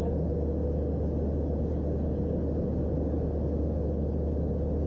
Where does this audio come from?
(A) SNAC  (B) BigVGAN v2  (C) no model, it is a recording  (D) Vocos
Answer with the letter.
C